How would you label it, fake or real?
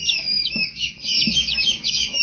fake